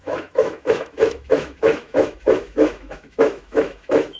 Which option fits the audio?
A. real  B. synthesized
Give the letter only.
B